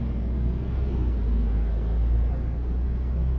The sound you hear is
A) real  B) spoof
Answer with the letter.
B